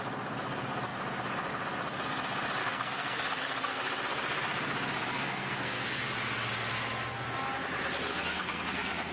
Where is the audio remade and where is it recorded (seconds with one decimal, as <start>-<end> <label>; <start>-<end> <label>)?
0.0-2.6 recorded; 2.6-3.8 remade; 3.8-5.2 recorded; 5.2-6.0 remade; 6.0-8.1 recorded; 8.1-9.1 remade